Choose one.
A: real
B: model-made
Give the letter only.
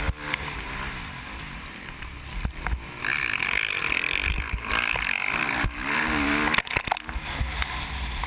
A